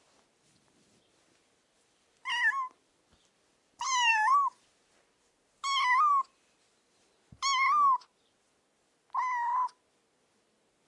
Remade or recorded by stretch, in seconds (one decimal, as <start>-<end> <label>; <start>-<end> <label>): 0.0-3.5 recorded; 3.5-4.3 remade; 4.3-10.9 recorded